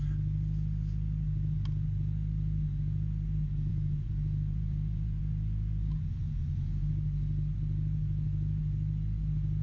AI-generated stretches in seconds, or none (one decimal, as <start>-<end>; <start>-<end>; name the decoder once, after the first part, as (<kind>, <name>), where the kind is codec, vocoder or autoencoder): 3.7-5.2 (vocoder, Vocos); 6.2-6.9

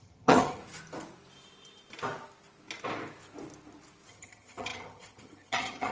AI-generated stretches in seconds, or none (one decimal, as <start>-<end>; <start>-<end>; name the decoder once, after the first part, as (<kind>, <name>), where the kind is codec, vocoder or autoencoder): 0.0-0.6 (vocoder, HiFi-GAN); 4.1-5.9

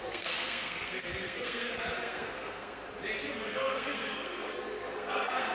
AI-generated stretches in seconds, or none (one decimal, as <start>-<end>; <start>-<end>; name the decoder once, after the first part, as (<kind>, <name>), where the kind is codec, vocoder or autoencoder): 0.0-2.8 (codec, SNAC); 3.3-5.5

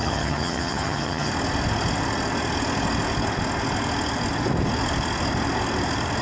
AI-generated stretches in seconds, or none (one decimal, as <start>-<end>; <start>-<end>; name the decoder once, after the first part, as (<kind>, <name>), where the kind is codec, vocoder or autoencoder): 0.0-1.3 (vocoder, HiFi-GAN)